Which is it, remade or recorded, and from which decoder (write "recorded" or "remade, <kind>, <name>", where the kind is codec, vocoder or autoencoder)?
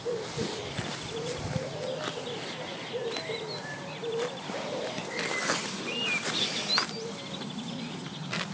recorded